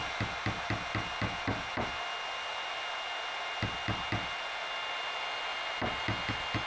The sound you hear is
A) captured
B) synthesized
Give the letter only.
A